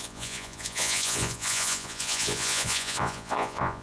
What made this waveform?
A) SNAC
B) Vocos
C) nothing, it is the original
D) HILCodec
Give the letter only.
B